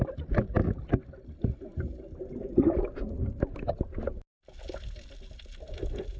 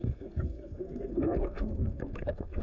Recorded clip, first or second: first